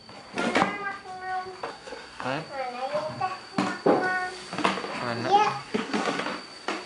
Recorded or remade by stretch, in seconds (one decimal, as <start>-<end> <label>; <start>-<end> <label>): 0.0-1.7 recorded; 1.7-2.4 remade; 2.4-5.6 recorded; 5.6-6.2 remade; 6.2-6.9 recorded

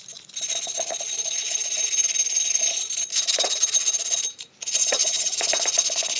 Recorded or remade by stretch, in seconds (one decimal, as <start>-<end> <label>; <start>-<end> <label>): 0.0-4.8 recorded; 4.8-5.4 remade; 5.4-6.2 recorded

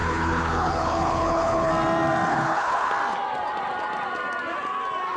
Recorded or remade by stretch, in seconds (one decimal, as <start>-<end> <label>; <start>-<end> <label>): 0.0-1.7 remade; 1.7-2.3 recorded; 2.3-2.9 remade; 2.9-5.2 recorded

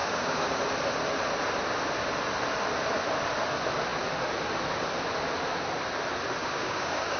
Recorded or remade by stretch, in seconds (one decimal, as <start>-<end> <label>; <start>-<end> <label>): 0.0-0.6 remade; 0.6-6.4 recorded; 6.4-7.2 remade

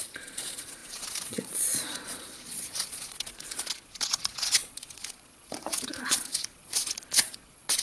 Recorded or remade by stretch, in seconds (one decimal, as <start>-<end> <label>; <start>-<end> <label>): 0.0-7.8 remade

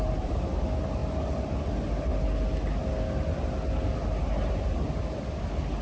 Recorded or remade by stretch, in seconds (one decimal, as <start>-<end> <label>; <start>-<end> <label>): 0.0-1.0 remade; 1.0-1.7 recorded; 1.7-2.1 remade; 2.1-5.8 recorded

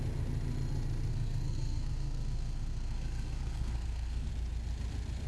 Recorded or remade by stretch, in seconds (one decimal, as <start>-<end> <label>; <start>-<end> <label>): 0.0-1.1 recorded; 1.1-4.3 remade; 4.3-5.3 recorded

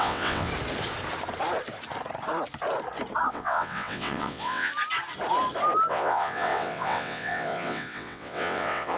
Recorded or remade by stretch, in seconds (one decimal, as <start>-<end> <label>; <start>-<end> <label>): 0.0-0.5 remade; 0.5-3.3 recorded; 3.3-4.7 remade; 4.7-5.9 recorded; 5.9-9.0 remade